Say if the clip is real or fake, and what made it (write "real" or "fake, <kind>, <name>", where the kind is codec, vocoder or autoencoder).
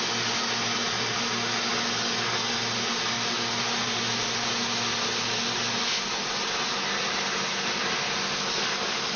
real